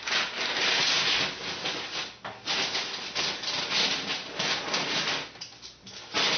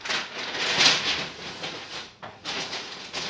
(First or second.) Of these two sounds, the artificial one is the second